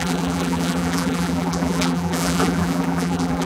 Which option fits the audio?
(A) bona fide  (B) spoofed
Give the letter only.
B